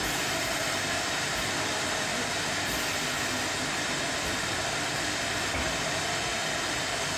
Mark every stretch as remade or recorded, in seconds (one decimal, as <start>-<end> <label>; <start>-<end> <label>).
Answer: 0.0-2.1 remade; 2.1-5.3 recorded; 5.3-7.2 remade